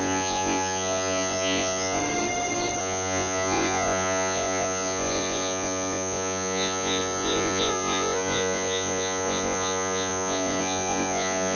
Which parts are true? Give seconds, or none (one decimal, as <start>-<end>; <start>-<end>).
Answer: 2.0-2.8